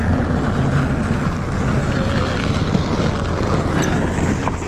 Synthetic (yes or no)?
no